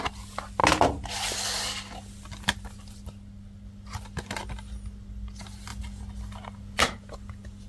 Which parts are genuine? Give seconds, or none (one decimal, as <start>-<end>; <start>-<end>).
0.0-7.7